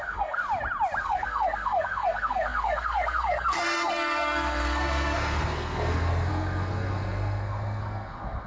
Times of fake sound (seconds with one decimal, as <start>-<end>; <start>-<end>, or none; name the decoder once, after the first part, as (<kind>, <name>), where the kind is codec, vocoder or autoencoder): 0.0-0.4 (codec, SNAC); 1.0-8.5